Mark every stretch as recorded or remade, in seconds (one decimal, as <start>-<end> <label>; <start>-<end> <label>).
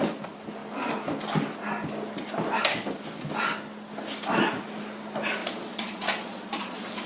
0.0-5.4 recorded; 5.4-7.1 remade